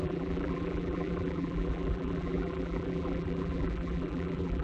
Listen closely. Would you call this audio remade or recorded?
remade